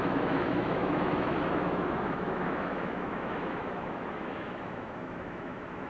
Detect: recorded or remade remade